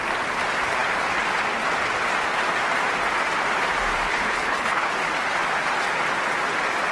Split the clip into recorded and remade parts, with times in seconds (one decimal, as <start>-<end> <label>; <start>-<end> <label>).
0.0-4.1 recorded; 4.1-4.9 remade; 4.9-6.9 recorded